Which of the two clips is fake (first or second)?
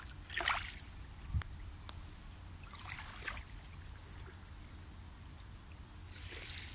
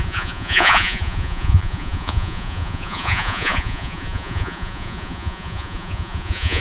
second